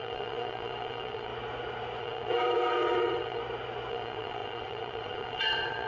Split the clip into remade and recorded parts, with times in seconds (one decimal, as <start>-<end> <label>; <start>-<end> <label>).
0.0-1.3 remade; 1.3-2.0 recorded; 2.0-3.4 remade; 3.4-3.9 recorded; 3.9-5.9 remade